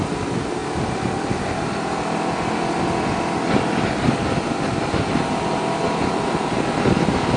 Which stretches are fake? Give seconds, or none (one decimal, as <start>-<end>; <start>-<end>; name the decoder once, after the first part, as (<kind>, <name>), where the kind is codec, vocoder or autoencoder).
none